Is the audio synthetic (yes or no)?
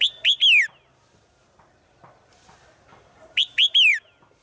no